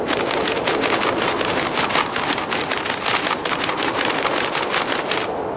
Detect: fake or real real